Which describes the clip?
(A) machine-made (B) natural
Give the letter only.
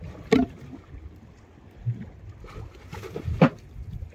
B